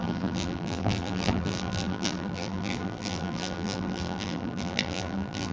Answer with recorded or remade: remade